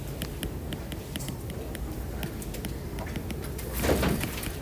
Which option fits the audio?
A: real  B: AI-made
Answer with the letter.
A